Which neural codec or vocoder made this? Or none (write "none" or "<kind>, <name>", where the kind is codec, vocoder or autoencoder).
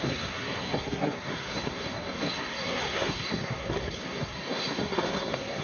codec, SNAC